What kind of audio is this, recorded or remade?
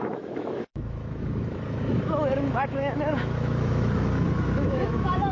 remade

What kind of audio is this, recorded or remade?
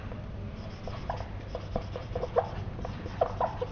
recorded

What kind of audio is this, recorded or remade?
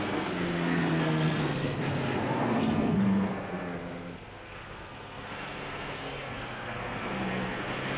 remade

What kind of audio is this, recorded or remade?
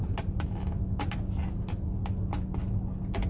recorded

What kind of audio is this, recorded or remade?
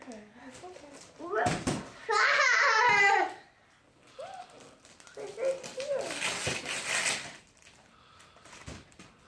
remade